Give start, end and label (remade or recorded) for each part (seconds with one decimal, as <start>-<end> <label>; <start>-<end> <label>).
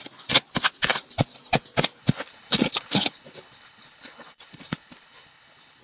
0.0-2.0 recorded; 2.0-5.8 remade